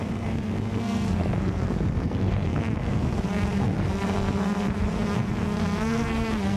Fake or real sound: fake